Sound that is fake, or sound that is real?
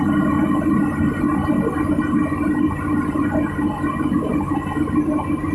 real